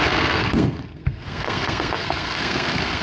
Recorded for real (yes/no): no